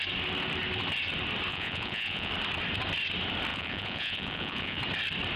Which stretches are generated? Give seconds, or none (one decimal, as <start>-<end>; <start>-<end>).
1.5-2.3; 3.5-4.8